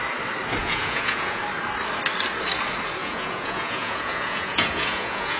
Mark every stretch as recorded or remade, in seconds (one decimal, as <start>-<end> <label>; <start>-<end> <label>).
0.0-0.6 recorded; 0.6-1.4 remade; 1.4-3.0 recorded; 3.0-5.4 remade